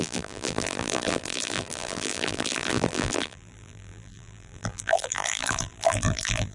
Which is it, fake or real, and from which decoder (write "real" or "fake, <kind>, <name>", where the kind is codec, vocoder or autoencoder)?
fake, vocoder, BigVGAN v2